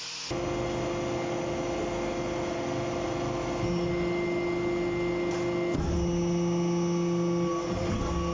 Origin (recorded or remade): recorded